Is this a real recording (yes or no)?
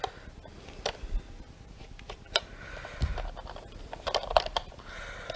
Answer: yes